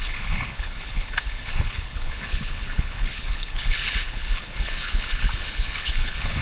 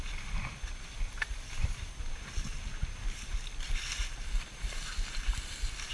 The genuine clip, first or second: second